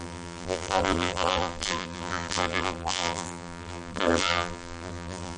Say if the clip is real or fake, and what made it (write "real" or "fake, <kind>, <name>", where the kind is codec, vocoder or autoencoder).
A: fake, vocoder, BigVGAN v2